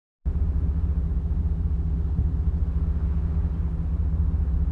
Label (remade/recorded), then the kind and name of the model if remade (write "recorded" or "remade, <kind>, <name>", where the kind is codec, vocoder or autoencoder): recorded